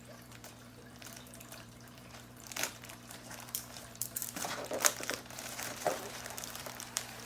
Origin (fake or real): fake